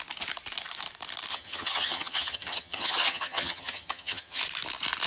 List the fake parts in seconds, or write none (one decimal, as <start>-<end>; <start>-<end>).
1.3-4.4